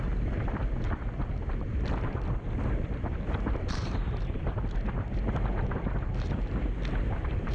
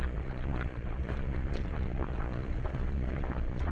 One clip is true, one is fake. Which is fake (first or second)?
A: second